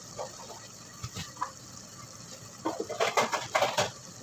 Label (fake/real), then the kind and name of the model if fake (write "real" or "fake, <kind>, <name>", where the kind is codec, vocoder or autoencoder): real